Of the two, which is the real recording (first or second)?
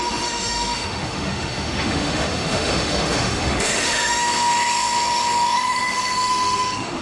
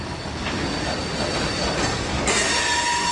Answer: second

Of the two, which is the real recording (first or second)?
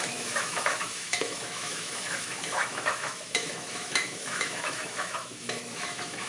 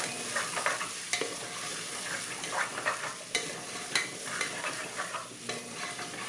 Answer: second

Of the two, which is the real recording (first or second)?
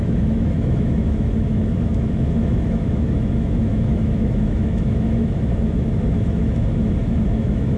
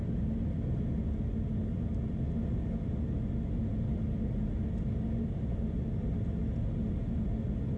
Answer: second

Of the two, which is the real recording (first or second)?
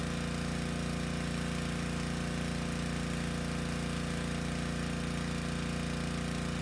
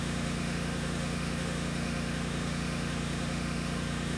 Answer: first